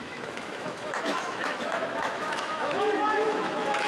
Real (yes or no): no